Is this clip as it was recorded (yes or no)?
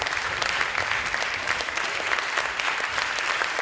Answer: no